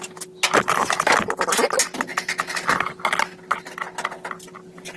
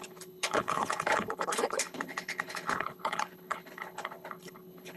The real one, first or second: first